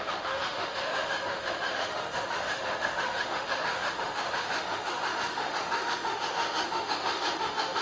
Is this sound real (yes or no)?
no